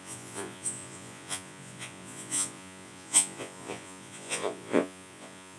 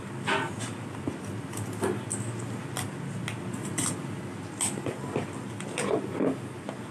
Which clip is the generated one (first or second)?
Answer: first